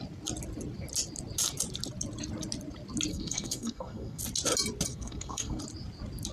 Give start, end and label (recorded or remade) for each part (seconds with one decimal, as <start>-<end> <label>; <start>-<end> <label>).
0.0-3.1 recorded; 3.1-4.2 remade; 4.2-4.9 recorded; 4.9-5.6 remade; 5.6-6.3 recorded